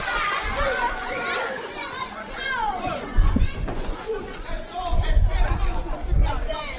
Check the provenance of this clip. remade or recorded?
remade